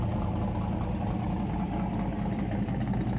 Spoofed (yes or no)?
no